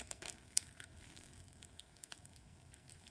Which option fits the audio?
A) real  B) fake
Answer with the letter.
B